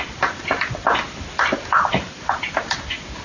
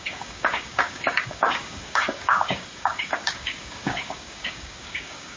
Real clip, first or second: first